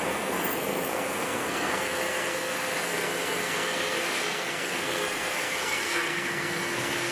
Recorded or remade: remade